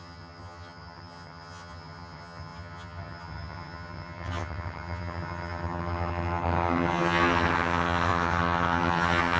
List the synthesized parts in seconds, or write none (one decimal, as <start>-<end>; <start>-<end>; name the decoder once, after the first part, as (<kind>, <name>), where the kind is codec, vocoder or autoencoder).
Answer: 0.0-9.4 (vocoder, HiFi-GAN)